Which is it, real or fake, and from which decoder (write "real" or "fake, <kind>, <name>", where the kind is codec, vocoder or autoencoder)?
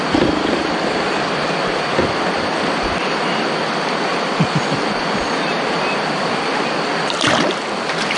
real